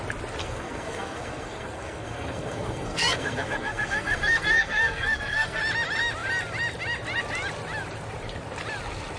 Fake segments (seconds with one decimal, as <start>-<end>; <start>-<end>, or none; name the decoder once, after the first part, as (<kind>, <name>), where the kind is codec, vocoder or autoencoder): 0.4-5.6 (codec, SNAC)